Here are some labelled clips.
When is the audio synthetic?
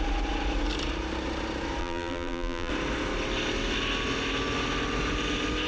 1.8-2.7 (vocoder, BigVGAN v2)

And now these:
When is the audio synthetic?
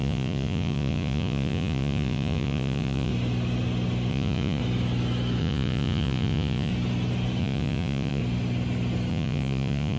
0.0-3.1 (vocoder, Vocos); 4.1-4.6; 5.4-6.7; 7.4-8.2; 9.1-10.0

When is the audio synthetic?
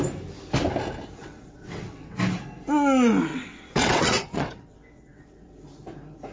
1.2-2.2 (vocoder, WaveNeXt); 3.3-5.5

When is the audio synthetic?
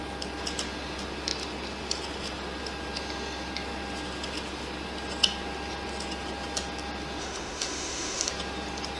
7.2-8.3 (autoencoder, DAC-VAE)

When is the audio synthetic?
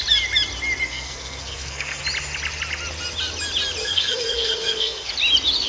0.9-2.0 (codec, SNAC); 3.8-5.1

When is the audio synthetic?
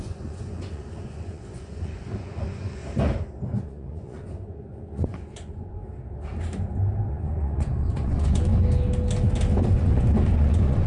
0.0-2.8 (vocoder, Vocos); 3.6-5.8; 7.1-8.5; 9.7-10.9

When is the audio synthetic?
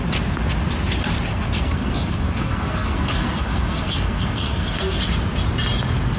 1.3-5.0 (codec, SNAC)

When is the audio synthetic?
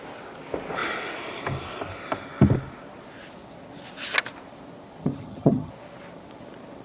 5.0-5.7 (vocoder, HiFi-GAN)